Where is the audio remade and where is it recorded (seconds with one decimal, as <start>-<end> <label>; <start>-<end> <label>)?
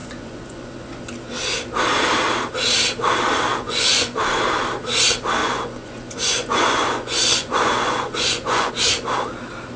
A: 0.0-1.0 remade; 1.0-3.5 recorded; 3.5-4.2 remade; 4.2-5.4 recorded; 5.4-8.7 remade; 8.7-9.8 recorded